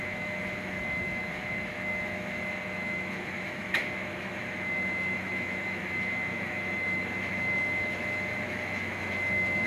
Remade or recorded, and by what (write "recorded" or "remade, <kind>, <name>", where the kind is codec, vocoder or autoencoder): remade, autoencoder, DAC-VAE